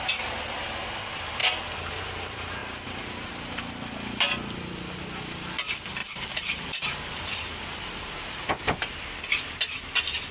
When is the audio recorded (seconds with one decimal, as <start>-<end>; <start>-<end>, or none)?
0.0-6.0; 8.5-10.3